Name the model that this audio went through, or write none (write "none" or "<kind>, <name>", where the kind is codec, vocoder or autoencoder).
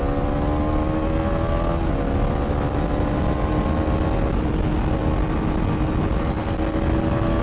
none